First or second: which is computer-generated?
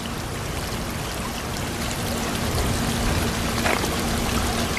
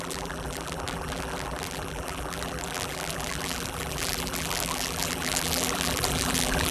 second